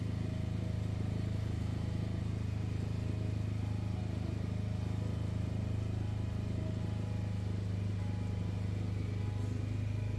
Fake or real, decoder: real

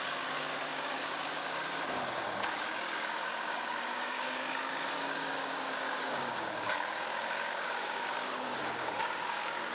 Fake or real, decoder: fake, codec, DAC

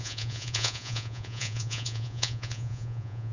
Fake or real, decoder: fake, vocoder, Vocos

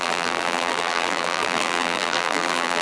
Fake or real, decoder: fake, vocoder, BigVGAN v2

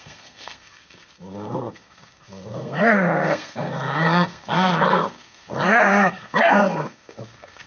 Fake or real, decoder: fake, codec, SNAC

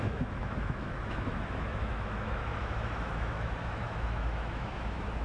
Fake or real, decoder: fake, autoencoder, DAC-VAE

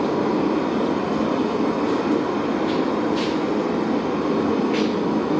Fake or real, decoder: real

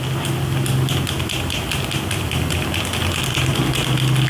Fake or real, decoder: real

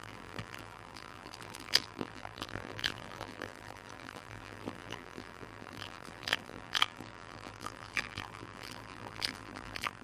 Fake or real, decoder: fake, vocoder, BigVGAN v2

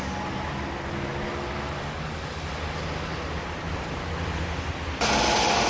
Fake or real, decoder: real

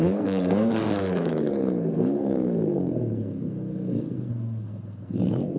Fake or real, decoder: fake, codec, SNAC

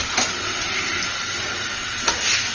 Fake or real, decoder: real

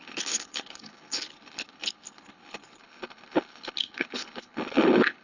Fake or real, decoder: fake, codec, HILCodec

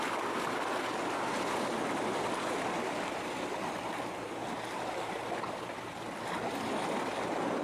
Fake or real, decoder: real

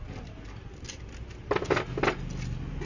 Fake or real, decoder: real